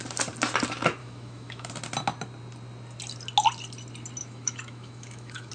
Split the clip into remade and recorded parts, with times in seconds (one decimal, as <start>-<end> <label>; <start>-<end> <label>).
0.0-1.0 recorded; 1.0-1.7 remade; 1.7-4.2 recorded; 4.2-5.5 remade